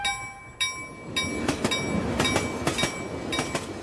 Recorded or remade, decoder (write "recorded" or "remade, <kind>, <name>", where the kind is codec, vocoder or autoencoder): recorded